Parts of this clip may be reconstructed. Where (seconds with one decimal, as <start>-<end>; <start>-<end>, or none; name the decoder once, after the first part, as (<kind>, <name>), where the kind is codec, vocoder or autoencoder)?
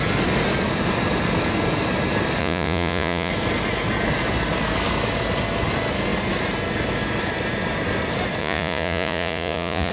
2.4-3.3 (vocoder, Vocos); 8.4-9.9